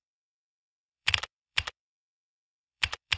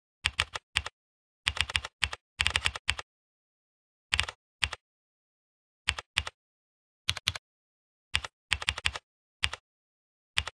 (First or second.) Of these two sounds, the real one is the second